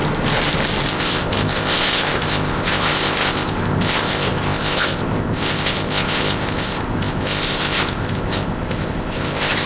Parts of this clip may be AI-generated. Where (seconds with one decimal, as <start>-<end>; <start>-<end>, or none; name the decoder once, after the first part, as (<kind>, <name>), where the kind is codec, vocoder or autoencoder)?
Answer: 0.9-9.7 (codec, ZipCodec)